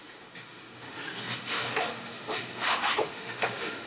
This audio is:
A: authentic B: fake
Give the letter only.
B